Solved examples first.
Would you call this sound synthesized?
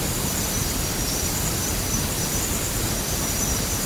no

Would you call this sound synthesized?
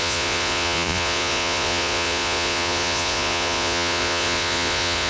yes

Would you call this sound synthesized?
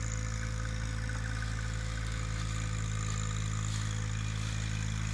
no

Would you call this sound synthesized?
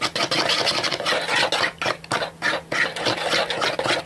no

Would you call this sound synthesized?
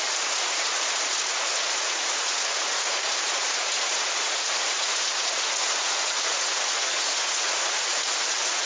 yes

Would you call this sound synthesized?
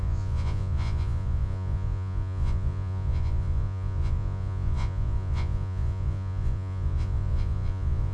yes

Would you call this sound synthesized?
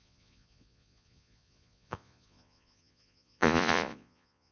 yes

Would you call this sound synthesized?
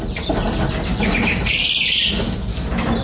no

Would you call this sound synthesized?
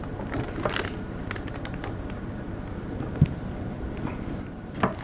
no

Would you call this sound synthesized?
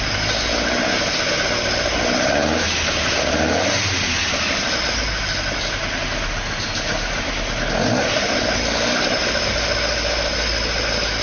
no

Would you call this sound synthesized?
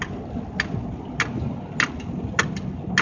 no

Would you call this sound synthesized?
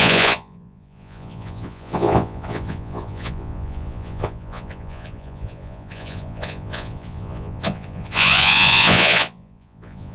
yes